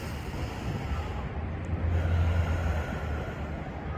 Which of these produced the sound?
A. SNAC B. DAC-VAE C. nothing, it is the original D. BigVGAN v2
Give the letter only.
C